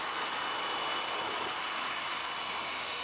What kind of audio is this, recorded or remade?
recorded